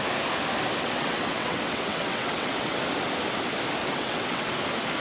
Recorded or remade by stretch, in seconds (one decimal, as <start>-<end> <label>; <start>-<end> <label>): 0.0-0.8 recorded; 0.8-2.8 remade; 2.8-3.8 recorded; 3.8-4.5 remade; 4.5-5.0 recorded